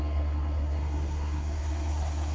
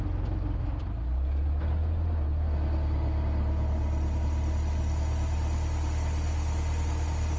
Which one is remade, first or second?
first